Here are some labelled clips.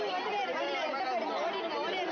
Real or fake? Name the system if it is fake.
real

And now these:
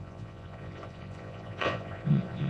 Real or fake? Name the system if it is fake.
fake, vocoder, Vocos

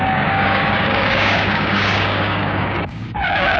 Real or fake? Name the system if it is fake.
fake, codec, DAC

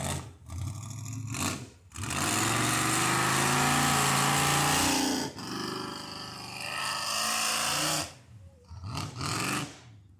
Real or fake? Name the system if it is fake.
real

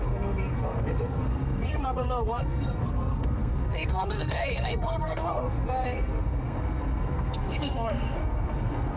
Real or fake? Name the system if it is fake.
fake, codec, SNAC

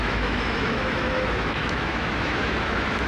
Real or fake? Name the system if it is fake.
fake, autoencoder, DAC-VAE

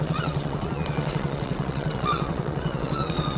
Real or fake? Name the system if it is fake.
fake, vocoder, WaveNeXt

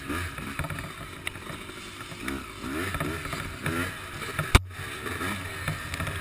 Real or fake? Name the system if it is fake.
real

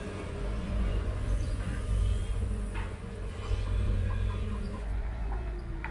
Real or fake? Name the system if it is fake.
fake, vocoder, Vocos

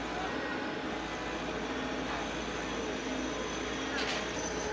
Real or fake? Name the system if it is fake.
real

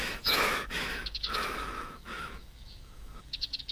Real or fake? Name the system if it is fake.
fake, autoencoder, DAC-VAE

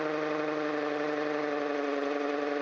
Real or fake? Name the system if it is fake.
real